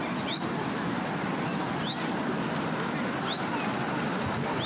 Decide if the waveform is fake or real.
real